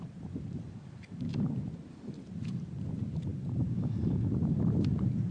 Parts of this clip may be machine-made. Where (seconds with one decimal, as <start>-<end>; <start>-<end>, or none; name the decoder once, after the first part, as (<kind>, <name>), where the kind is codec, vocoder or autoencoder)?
0.0-1.3 (vocoder, BigVGAN v2); 1.9-5.3